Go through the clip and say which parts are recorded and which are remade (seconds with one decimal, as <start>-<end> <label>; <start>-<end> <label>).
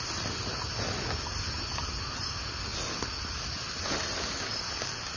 0.0-5.2 recorded